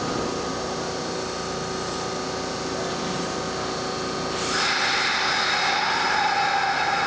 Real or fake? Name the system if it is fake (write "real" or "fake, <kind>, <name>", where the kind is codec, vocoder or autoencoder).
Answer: real